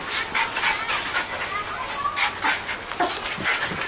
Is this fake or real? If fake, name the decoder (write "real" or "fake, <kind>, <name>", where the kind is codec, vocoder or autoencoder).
real